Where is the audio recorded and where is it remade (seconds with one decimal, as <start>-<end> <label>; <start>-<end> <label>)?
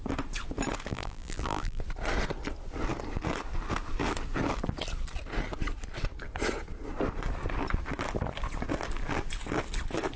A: 0.0-0.9 recorded; 0.9-1.8 remade; 1.8-10.2 recorded